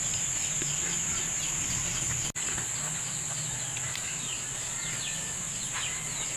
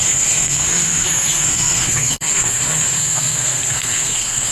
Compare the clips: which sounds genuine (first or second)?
first